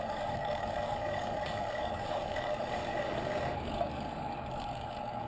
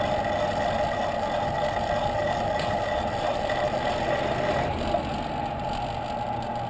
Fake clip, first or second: first